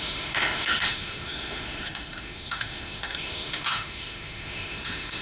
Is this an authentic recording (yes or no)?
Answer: no